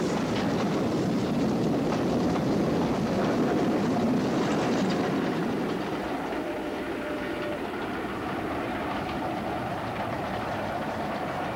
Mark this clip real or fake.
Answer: fake